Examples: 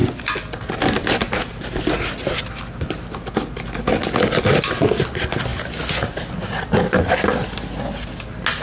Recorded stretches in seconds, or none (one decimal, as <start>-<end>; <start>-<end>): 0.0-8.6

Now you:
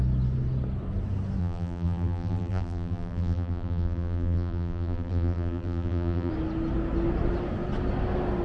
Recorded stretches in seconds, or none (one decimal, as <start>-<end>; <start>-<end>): 0.0-1.4; 6.3-8.4

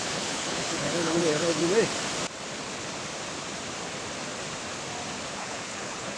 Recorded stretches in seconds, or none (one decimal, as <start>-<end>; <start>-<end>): 1.6-5.3

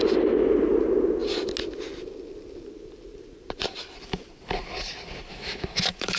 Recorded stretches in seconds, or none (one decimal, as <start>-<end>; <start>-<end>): 0.0-5.3

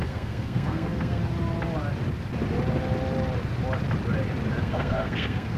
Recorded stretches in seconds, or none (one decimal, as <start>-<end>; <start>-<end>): 1.2-4.6